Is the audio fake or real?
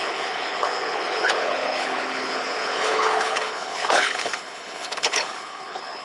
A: fake